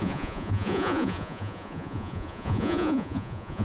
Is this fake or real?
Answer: fake